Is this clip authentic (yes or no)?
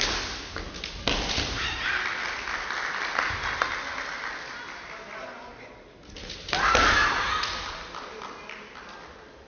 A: yes